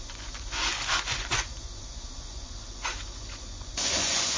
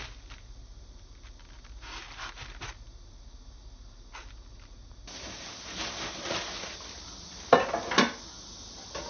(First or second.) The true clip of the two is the second